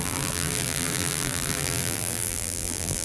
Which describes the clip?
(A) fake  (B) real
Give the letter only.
A